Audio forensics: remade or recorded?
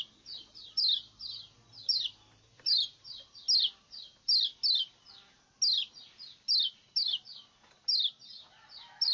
recorded